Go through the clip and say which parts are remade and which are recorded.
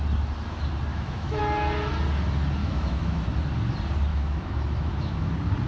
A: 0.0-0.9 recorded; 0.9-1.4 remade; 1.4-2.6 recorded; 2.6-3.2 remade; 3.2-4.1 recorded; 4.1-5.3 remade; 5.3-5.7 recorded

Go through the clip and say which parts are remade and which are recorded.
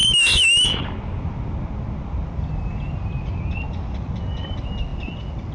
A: 0.0-0.8 remade; 0.8-5.5 recorded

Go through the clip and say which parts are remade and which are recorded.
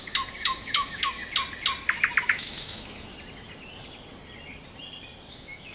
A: 0.0-1.2 remade; 1.2-2.2 recorded; 2.2-3.1 remade; 3.1-5.3 recorded; 5.3-5.7 remade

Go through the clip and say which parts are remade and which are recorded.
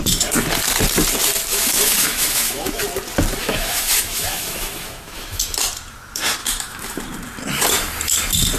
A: 0.0-1.5 recorded; 1.5-2.8 remade; 2.8-3.4 recorded; 3.4-5.4 remade; 5.4-6.4 recorded; 6.4-7.0 remade; 7.0-8.6 recorded